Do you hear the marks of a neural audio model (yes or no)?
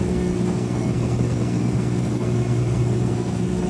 yes